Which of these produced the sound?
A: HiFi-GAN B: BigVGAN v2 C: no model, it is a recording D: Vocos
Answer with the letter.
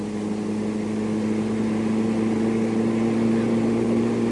C